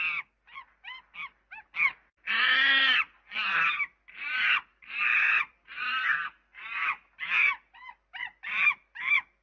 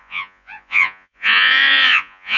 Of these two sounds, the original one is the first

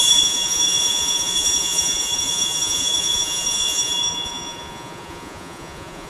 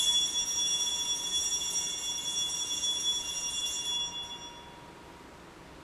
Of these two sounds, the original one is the second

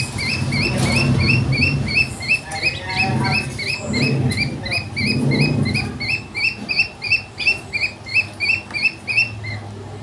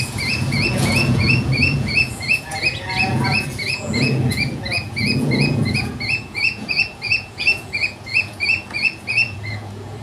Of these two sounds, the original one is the first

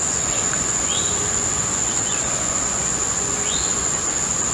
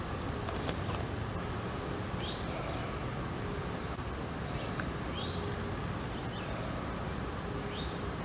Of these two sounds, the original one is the second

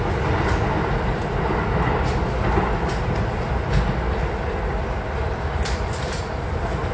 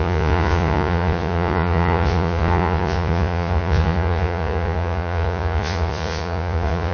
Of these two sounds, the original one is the first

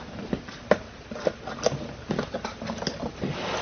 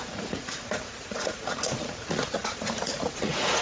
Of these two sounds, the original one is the first